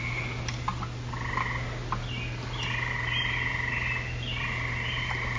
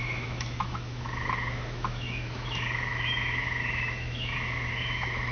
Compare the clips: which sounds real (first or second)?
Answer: first